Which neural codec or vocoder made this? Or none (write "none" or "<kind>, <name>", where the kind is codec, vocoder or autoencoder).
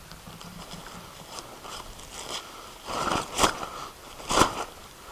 none